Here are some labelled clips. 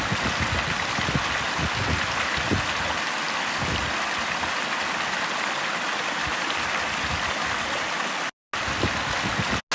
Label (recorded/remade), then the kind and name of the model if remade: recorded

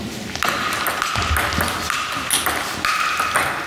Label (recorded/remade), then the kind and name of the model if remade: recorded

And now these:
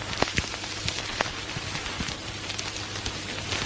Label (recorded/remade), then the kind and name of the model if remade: recorded